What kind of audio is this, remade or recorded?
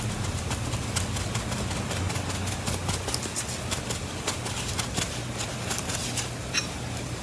recorded